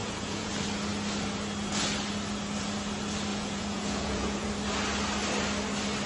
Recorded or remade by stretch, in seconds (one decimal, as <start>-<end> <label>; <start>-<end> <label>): 0.0-0.5 remade; 0.5-3.3 recorded; 3.3-4.5 remade; 4.5-6.1 recorded